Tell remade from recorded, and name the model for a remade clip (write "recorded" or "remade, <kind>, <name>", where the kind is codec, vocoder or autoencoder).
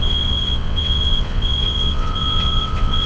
remade, vocoder, WaveNeXt